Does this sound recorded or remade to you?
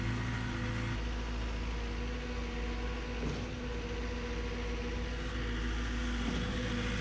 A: recorded